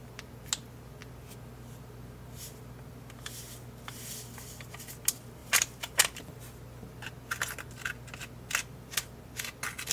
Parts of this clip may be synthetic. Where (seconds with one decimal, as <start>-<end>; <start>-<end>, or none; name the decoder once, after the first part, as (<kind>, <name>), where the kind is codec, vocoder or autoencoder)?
5.4-6.2 (vocoder, BigVGAN v2)